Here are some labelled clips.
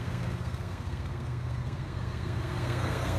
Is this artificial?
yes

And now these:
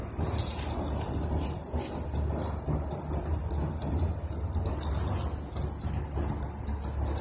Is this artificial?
no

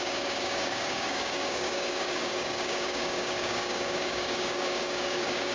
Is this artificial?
yes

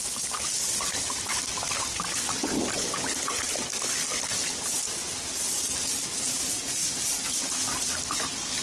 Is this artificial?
no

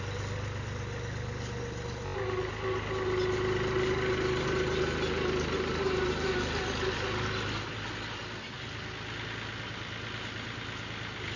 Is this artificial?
no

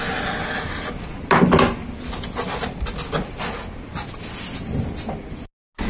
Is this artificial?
no